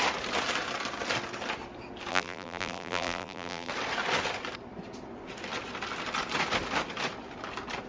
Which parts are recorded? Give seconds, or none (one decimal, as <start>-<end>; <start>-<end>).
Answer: 0.0-2.1; 3.7-7.9